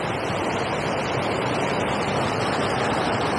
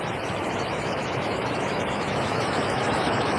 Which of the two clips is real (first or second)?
first